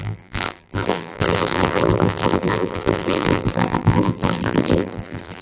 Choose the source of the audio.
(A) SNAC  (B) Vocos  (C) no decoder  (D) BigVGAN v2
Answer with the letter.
D